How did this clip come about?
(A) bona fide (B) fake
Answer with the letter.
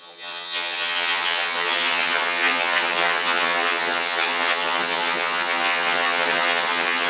B